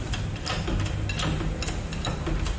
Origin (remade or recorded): recorded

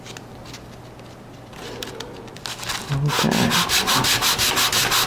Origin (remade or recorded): recorded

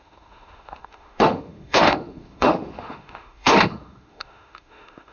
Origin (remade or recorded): remade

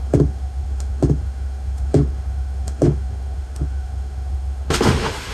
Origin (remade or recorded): remade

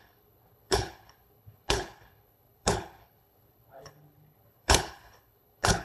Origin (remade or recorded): remade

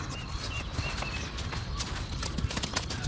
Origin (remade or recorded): recorded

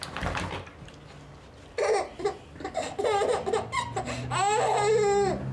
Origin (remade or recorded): recorded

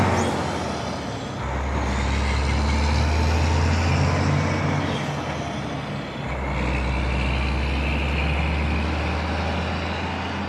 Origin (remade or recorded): recorded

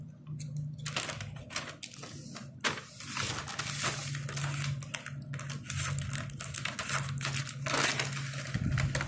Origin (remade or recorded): recorded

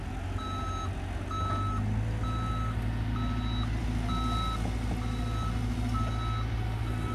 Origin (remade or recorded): recorded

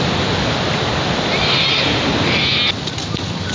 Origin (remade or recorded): recorded